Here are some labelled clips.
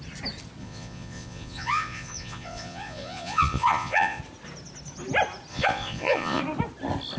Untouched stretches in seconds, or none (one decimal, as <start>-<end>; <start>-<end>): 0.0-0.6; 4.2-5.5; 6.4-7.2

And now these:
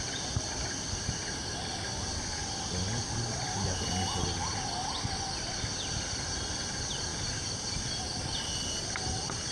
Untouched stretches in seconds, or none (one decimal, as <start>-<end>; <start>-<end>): 0.0-9.5

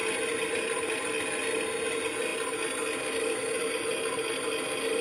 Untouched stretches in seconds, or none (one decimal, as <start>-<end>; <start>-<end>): 0.0-5.0

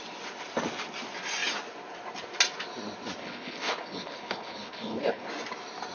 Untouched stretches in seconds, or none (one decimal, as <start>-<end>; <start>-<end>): 0.0-3.2; 5.3-5.9

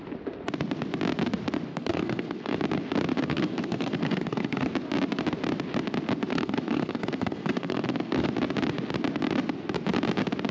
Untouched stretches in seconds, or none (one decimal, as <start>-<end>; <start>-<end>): 0.0-1.7; 2.6-3.1; 4.7-6.3; 8.3-10.5

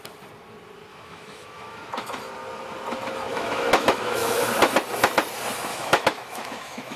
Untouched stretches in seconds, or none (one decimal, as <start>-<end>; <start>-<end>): 0.0-0.9; 2.2-3.3; 4.5-5.7

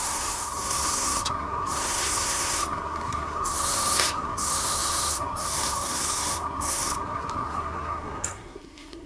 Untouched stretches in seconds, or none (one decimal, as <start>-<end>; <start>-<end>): none

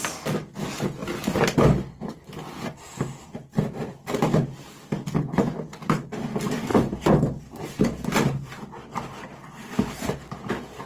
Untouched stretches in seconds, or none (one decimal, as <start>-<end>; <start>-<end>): 0.0-6.7